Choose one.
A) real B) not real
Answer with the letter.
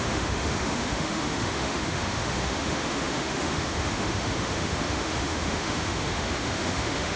B